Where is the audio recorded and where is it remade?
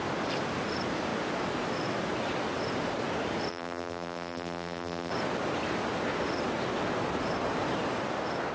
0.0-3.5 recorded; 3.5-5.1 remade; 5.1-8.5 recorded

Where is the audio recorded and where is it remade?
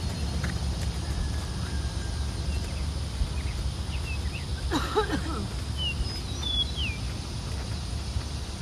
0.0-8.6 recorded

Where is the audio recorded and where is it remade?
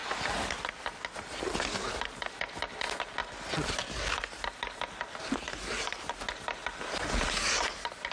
0.0-8.1 recorded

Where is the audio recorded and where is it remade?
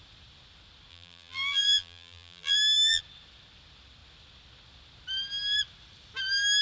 0.0-0.9 recorded; 0.9-3.0 remade; 3.0-6.6 recorded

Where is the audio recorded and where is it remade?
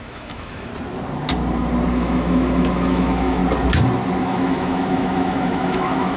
0.0-0.7 remade; 0.7-1.9 recorded; 1.9-3.4 remade; 3.4-4.2 recorded; 4.2-6.2 remade